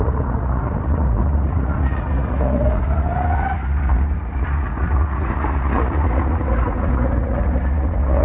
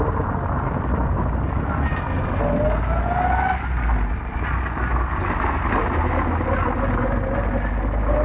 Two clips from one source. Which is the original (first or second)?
second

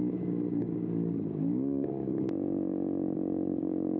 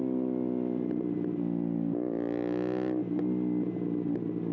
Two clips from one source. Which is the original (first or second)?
second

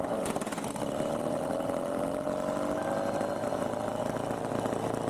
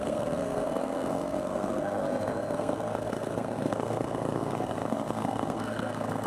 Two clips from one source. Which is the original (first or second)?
first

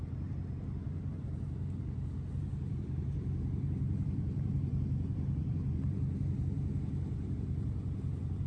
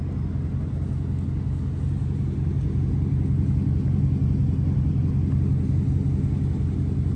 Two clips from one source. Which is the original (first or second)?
second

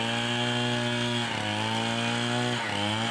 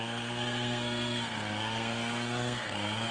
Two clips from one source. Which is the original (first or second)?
first